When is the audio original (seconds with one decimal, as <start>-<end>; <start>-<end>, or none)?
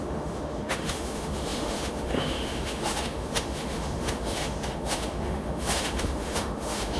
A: none